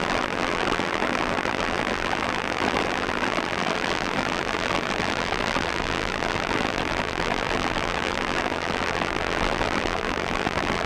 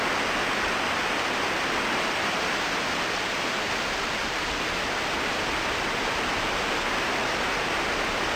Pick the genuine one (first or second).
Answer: second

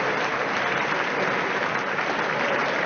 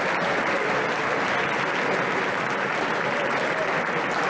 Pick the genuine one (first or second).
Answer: second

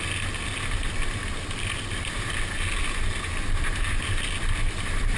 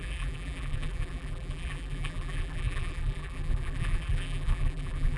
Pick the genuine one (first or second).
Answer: first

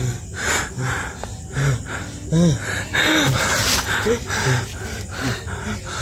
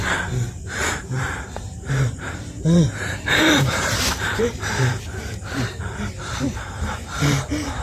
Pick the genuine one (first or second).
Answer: first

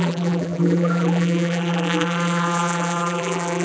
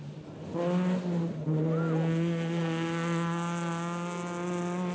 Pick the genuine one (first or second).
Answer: second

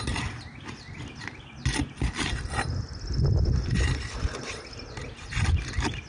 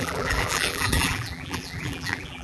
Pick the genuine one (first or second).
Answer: first